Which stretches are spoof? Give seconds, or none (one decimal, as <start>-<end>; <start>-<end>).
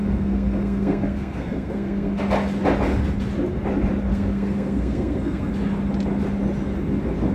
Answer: 0.0-2.2; 4.1-5.5